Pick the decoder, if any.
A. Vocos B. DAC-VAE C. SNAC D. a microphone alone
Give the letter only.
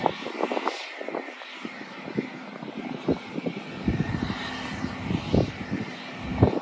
D